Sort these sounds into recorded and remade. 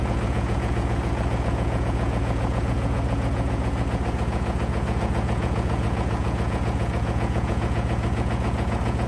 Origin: remade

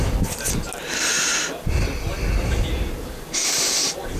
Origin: recorded